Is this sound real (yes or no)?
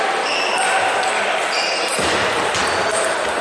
yes